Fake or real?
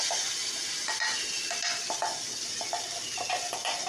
real